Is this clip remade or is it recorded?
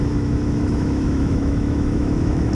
remade